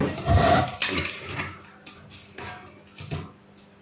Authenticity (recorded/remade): recorded